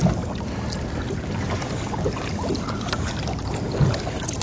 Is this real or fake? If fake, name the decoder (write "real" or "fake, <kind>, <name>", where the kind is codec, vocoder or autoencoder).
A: real